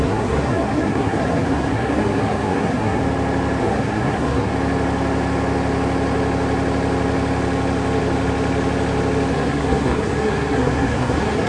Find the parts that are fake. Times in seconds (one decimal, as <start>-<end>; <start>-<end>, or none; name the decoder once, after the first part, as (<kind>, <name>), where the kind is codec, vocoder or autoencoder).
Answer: 0.0-3.0 (codec, SNAC); 3.6-4.5; 9.3-11.5